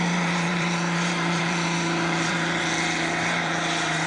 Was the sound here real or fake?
fake